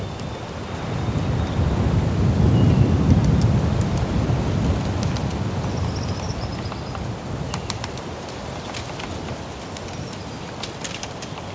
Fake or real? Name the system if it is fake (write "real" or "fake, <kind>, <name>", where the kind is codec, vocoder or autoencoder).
real